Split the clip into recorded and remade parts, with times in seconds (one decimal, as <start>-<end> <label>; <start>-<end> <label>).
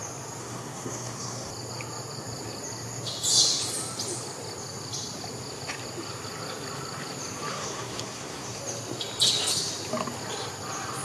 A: 0.0-0.4 recorded; 0.4-1.5 remade; 1.5-7.5 recorded; 7.5-8.6 remade; 8.6-11.0 recorded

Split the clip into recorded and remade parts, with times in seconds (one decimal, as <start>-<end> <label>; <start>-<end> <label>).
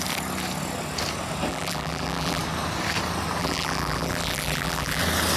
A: 0.0-1.5 recorded; 1.5-2.4 remade; 2.4-3.4 recorded; 3.4-5.0 remade; 5.0-5.4 recorded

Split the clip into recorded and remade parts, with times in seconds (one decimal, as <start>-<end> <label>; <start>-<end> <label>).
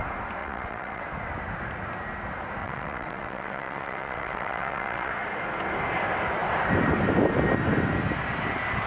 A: 0.0-0.4 recorded; 0.4-1.0 remade; 1.0-2.6 recorded; 2.6-5.1 remade; 5.1-8.9 recorded